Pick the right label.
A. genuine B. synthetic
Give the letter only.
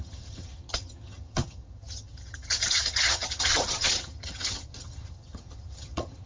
B